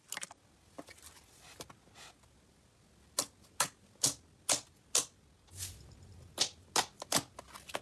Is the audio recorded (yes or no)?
yes